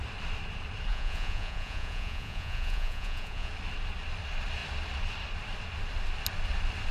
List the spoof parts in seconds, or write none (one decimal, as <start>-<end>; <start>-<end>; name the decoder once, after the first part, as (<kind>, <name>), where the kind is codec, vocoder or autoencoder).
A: 0.9-3.5 (vocoder, Vocos)